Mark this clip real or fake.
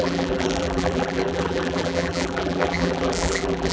fake